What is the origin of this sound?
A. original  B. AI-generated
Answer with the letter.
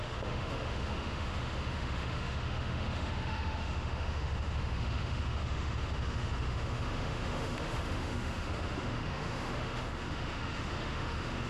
B